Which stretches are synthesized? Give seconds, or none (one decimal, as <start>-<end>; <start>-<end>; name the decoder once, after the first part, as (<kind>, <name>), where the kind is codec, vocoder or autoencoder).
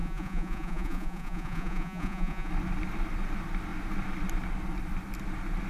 0.0-2.5 (vocoder, Vocos)